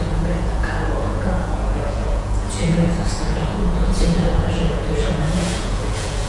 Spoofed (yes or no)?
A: yes